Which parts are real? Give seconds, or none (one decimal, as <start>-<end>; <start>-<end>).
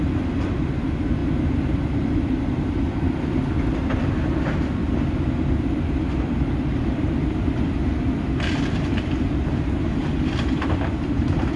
1.2-1.7